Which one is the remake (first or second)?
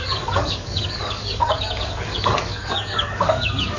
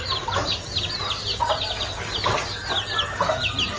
first